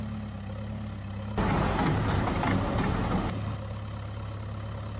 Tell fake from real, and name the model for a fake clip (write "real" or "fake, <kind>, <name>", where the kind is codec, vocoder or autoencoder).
real